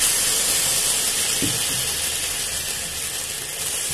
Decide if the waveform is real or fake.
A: real